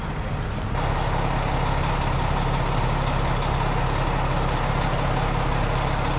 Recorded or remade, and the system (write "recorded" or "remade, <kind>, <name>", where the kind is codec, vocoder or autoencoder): recorded